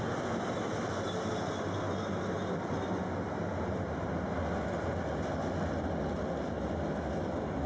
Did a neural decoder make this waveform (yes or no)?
no